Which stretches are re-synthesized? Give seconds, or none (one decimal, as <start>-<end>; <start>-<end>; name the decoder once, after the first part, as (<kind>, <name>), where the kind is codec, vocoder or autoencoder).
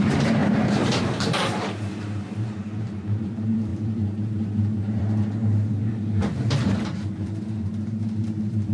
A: 0.0-8.7 (vocoder, BigVGAN v2)